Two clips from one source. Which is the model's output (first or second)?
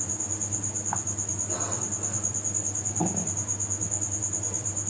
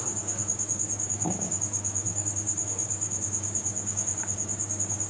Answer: second